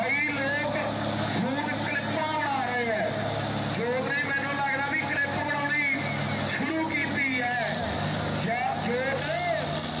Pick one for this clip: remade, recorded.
recorded